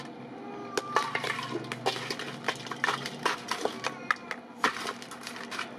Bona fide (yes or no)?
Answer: yes